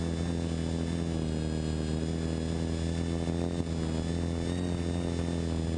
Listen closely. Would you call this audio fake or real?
real